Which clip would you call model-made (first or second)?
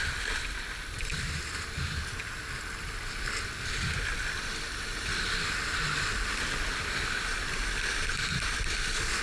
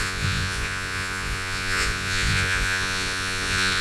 second